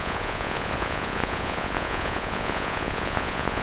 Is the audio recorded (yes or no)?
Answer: no